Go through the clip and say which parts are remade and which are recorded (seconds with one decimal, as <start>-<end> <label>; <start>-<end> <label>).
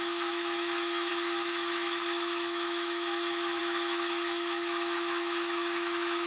0.0-6.3 remade